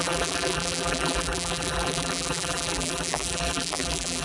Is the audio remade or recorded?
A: remade